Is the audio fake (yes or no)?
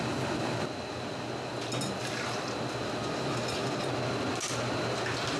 no